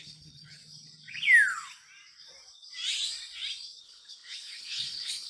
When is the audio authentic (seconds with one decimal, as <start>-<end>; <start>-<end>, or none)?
0.6-3.8